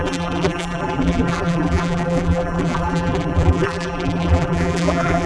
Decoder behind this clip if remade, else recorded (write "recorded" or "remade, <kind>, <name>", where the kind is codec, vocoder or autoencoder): remade, vocoder, BigVGAN v2